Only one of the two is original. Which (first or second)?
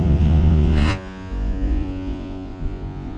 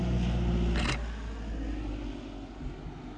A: second